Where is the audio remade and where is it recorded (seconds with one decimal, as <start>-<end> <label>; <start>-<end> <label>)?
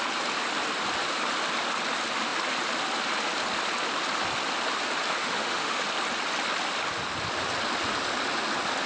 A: 0.0-5.2 recorded; 5.2-5.8 remade; 5.8-8.9 recorded